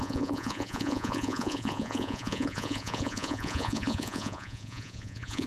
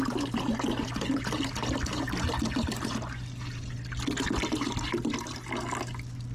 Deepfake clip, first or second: first